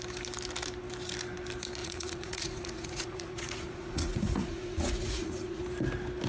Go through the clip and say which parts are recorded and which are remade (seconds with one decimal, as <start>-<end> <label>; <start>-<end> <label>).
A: 0.0-1.8 recorded; 1.8-5.6 remade; 5.6-6.3 recorded